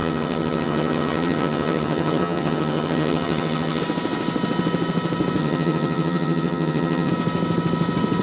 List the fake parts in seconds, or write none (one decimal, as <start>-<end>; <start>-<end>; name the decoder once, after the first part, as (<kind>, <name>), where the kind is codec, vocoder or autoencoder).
0.0-3.8 (vocoder, HiFi-GAN); 5.4-7.1